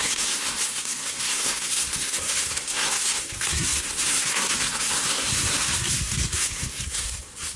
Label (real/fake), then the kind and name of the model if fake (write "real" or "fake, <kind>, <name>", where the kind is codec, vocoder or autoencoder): fake, codec, SNAC